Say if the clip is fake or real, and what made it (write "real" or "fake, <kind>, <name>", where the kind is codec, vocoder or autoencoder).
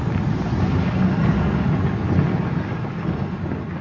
real